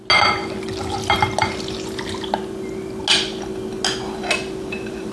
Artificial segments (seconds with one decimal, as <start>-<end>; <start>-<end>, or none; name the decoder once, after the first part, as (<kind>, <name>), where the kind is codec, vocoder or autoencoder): none